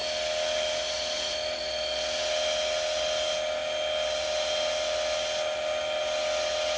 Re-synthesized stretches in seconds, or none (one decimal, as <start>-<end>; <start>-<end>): none